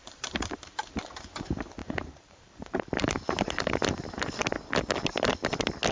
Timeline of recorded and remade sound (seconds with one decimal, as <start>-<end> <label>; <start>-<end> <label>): 0.0-1.1 remade; 1.1-1.8 recorded; 1.8-2.8 remade; 2.8-5.9 recorded